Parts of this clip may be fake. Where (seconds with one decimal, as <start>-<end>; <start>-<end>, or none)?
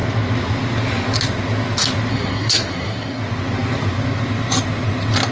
2.1-3.2